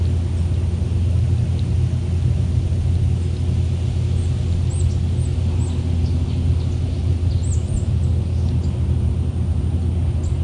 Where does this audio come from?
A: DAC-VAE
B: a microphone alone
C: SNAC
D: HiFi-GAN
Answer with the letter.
B